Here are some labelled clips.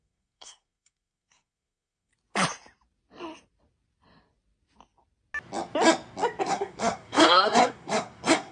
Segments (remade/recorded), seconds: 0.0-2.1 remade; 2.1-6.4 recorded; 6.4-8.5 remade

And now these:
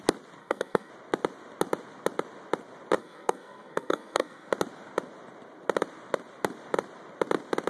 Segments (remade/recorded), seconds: 0.0-0.4 recorded; 0.4-0.9 remade; 0.9-3.0 recorded; 3.0-4.5 remade; 4.5-7.7 recorded

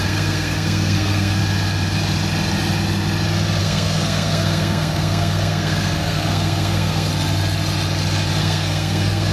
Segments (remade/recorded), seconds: 0.0-1.4 remade; 1.4-3.6 recorded; 3.6-7.1 remade; 7.1-8.4 recorded; 8.4-9.3 remade